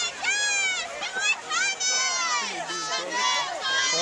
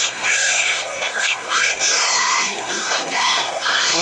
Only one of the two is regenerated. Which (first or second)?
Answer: second